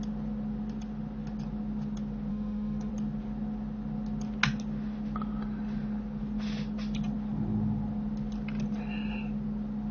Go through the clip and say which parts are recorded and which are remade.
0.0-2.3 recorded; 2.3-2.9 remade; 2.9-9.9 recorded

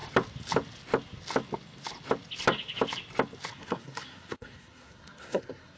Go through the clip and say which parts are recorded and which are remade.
0.0-3.5 recorded; 3.5-5.8 remade

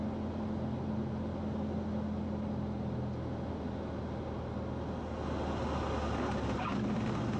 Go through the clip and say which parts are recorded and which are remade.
0.0-7.4 recorded

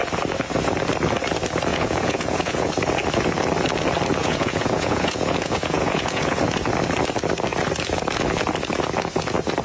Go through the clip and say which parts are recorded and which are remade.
0.0-1.7 recorded; 1.7-2.7 remade; 2.7-4.2 recorded; 4.2-6.4 remade; 6.4-9.6 recorded

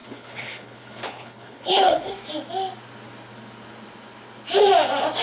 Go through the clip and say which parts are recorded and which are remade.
0.0-2.1 remade; 2.1-5.2 recorded

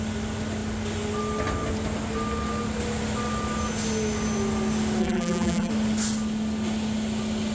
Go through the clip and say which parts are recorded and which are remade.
0.0-5.0 recorded; 5.0-5.7 remade; 5.7-7.5 recorded